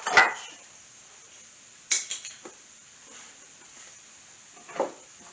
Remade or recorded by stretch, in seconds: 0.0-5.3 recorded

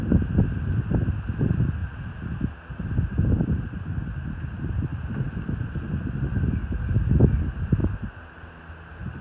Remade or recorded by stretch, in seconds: 0.0-9.2 recorded

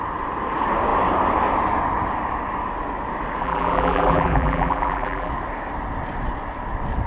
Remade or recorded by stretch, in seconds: 0.0-3.4 recorded; 3.4-5.3 remade; 5.3-7.1 recorded

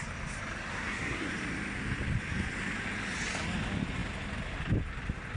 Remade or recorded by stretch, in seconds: 0.0-0.7 recorded; 0.7-1.3 remade; 1.3-5.4 recorded